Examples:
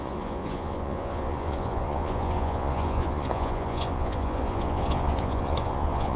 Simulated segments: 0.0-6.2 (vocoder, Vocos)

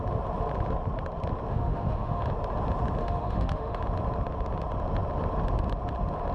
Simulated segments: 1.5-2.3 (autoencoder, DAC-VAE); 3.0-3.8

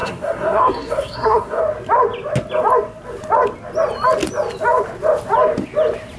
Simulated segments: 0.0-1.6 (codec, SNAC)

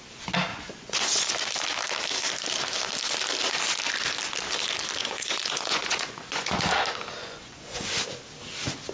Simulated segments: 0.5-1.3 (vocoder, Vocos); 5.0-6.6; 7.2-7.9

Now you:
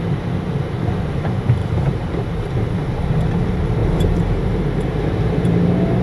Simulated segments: 1.6-2.5 (vocoder, BigVGAN v2); 3.8-5.6